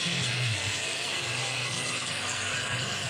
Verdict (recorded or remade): remade